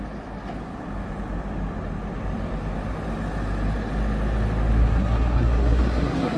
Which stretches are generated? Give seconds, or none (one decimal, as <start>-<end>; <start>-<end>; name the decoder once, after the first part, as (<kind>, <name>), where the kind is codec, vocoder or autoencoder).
4.8-6.4 (codec, SNAC)